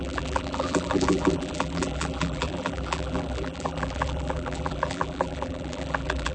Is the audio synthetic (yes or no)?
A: yes